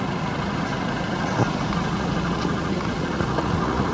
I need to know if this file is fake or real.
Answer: fake